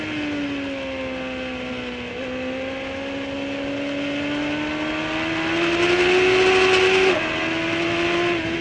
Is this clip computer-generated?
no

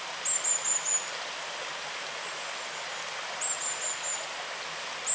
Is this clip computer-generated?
no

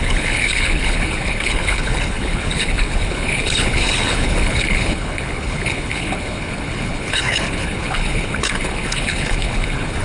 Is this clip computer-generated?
yes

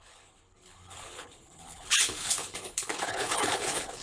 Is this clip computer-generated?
yes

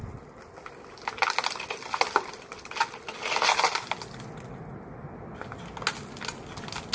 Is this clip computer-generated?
no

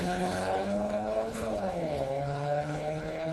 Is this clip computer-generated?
yes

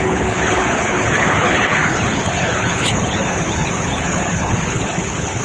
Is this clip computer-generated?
yes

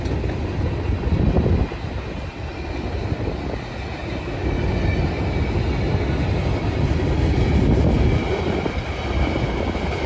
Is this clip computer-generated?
no